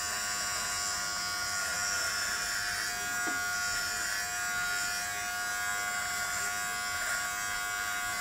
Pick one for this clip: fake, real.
real